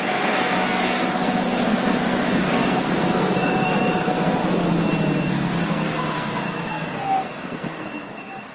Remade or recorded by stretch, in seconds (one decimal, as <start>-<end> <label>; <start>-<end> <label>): 0.0-4.4 remade; 4.4-5.2 recorded; 5.2-8.5 remade